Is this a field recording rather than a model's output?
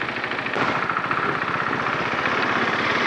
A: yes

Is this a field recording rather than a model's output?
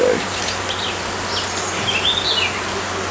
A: yes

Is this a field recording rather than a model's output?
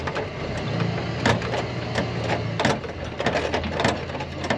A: yes